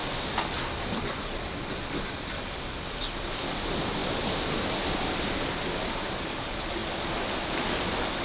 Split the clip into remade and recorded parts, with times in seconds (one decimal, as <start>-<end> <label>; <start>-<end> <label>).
0.0-8.2 recorded